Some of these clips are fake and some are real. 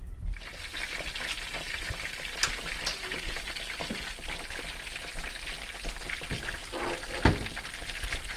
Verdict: real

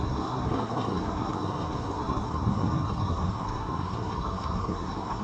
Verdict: fake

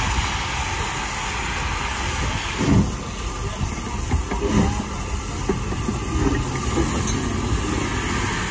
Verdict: real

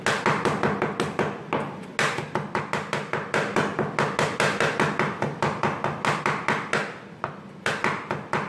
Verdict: real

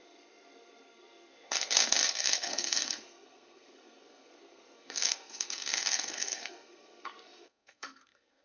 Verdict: fake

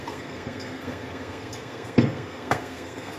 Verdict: fake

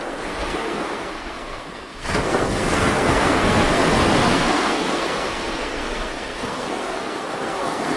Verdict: fake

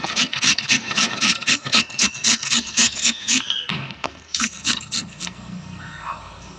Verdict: fake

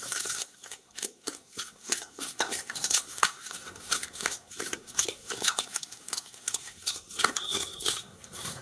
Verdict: fake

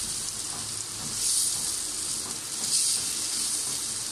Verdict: real